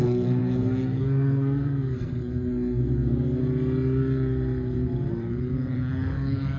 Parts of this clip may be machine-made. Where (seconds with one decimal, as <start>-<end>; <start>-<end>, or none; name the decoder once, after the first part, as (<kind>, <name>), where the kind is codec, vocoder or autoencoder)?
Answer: 0.0-3.4 (codec, SNAC); 5.1-6.6